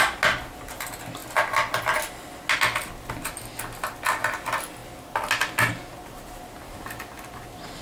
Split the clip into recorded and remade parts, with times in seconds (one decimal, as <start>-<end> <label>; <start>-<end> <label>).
0.0-7.8 recorded